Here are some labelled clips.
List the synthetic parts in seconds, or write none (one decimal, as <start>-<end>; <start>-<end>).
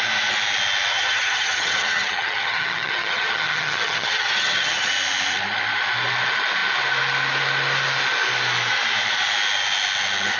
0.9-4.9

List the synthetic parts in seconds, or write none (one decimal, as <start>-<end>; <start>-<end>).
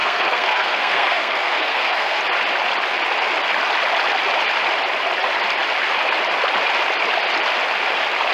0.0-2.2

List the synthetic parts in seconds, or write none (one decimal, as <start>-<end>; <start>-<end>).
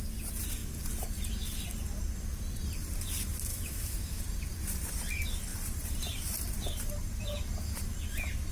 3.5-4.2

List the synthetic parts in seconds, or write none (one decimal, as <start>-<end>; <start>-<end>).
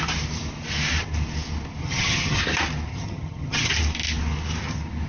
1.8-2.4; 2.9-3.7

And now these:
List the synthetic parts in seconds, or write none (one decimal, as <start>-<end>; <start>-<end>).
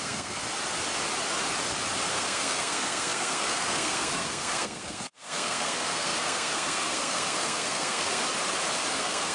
0.0-0.4; 2.1-8.2; 8.9-9.3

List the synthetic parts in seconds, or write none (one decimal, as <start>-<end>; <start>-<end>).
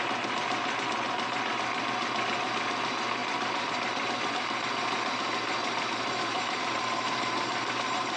3.2-4.3; 5.6-8.2